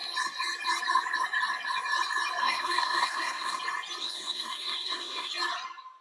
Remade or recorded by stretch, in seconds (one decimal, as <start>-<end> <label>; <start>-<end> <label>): 0.0-2.4 recorded; 2.4-3.6 remade; 3.6-4.0 recorded; 4.0-5.3 remade; 5.3-6.0 recorded